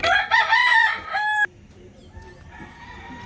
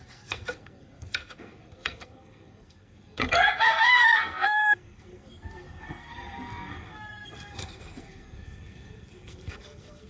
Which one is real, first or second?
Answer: first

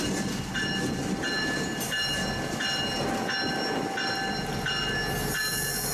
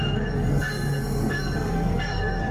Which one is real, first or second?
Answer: first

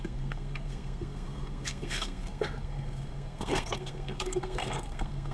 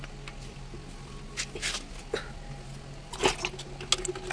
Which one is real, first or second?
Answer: second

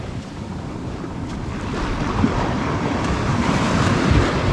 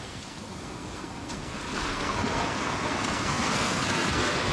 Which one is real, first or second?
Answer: first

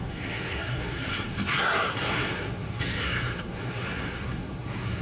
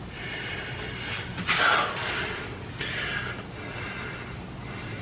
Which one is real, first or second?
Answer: second